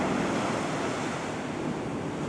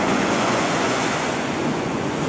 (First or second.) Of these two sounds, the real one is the first